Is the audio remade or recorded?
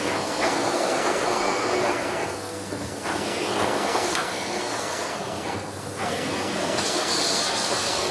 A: remade